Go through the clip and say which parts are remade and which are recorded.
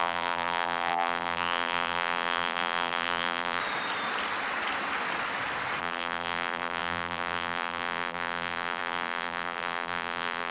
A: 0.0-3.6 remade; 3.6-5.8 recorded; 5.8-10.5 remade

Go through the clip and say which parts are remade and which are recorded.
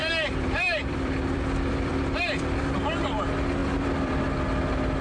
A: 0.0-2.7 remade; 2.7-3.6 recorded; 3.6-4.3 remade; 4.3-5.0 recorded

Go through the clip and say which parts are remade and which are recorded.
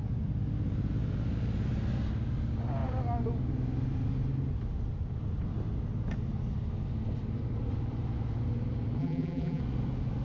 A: 0.0-9.0 recorded; 9.0-9.6 remade; 9.6-10.2 recorded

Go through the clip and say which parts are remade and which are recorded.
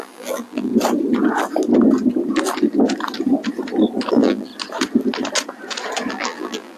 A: 0.0-0.7 remade; 0.7-4.1 recorded; 4.1-4.5 remade; 4.5-6.1 recorded; 6.1-6.8 remade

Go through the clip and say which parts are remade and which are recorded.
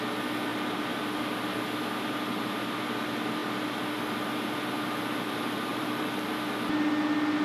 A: 0.0-5.7 recorded; 5.7-6.5 remade; 6.5-7.4 recorded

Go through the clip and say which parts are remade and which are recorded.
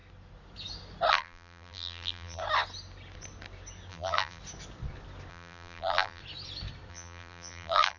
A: 0.0-1.1 recorded; 1.1-2.4 remade; 2.4-3.9 recorded; 3.9-4.4 remade; 4.4-5.3 recorded; 5.3-6.2 remade; 6.2-6.9 recorded; 6.9-8.0 remade